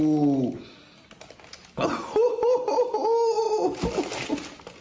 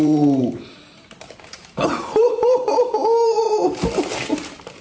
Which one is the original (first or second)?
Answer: first